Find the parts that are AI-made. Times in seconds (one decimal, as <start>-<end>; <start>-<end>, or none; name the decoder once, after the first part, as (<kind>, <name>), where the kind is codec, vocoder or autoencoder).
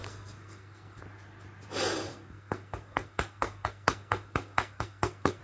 0.0-1.0 (codec, SNAC); 2.1-5.4